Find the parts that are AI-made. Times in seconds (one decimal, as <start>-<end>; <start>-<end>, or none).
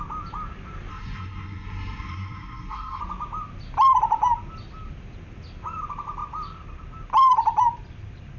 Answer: 0.9-3.0